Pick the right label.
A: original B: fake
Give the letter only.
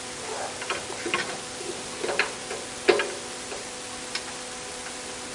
A